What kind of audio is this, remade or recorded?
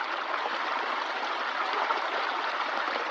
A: recorded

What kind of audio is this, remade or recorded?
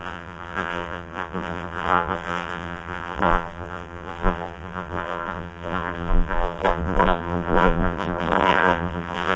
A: remade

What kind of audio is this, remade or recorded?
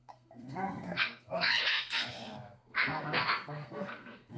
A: remade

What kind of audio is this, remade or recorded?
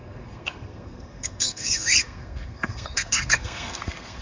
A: remade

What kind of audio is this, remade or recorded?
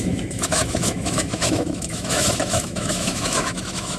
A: remade